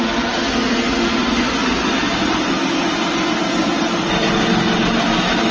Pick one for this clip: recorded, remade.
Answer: recorded